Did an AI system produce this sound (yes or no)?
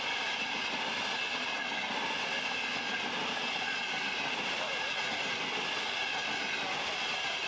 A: no